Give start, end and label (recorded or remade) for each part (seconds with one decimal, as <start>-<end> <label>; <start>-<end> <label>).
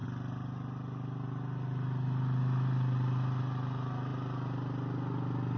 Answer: 0.0-5.6 recorded